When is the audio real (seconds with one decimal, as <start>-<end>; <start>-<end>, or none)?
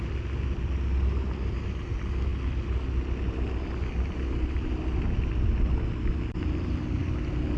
0.0-7.6